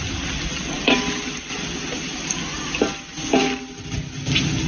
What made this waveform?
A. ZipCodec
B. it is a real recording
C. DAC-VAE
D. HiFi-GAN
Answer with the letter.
B